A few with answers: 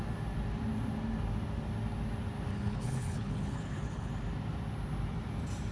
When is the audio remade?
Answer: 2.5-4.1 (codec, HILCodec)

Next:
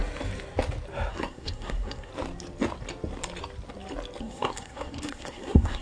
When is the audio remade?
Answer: 1.1-2.1 (codec, SNAC); 4.2-5.8

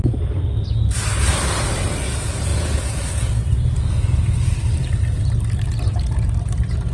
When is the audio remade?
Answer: 2.5-3.1 (vocoder, BigVGAN v2)

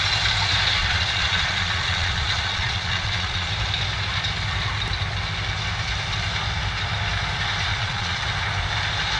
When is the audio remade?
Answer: 0.8-3.5 (vocoder, Vocos); 7.7-8.2

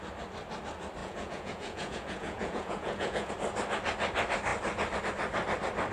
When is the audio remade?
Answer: 1.0-3.3 (vocoder, Vocos)

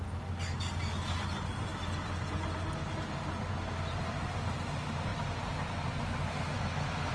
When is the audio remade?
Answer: none

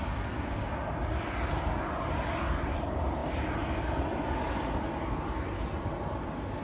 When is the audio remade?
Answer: none

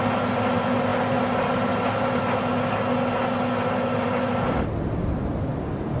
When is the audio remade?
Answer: none